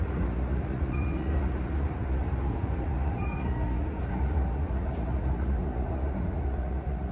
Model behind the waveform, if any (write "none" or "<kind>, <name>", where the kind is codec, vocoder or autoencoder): vocoder, Vocos